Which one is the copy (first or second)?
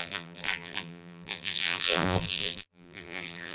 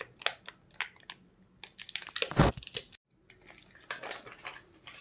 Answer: first